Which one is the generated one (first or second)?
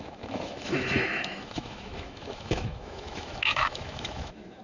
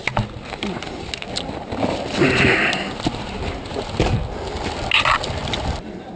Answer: first